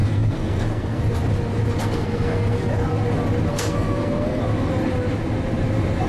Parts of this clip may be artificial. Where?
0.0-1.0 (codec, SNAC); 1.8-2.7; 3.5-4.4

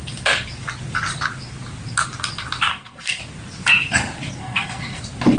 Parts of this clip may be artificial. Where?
2.7-3.2 (codec, SNAC); 4.4-5.0